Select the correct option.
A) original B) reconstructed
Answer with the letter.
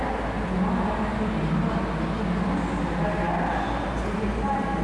A